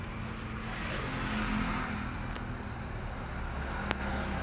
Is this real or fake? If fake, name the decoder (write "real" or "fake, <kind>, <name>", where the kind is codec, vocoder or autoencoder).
real